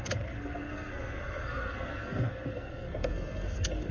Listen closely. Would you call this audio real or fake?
fake